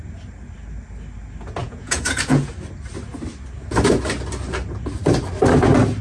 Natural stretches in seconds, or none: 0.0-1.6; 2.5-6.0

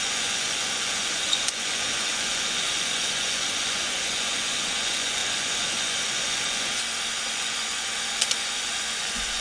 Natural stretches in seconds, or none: 6.7-7.3

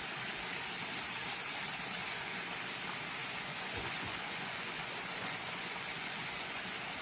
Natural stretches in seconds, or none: 0.0-2.0; 2.5-3.2; 6.6-7.0

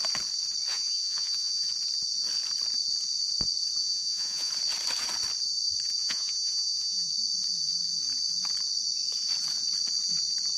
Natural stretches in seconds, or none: 0.0-0.7; 1.7-3.8; 4.5-6.0; 7.1-10.6

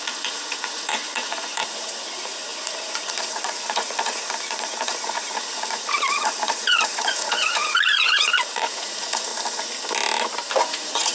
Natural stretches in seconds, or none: 9.3-10.5